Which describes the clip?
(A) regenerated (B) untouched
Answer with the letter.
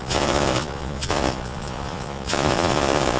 A